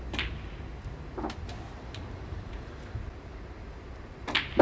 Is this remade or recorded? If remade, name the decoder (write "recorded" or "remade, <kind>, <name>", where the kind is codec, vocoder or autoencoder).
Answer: recorded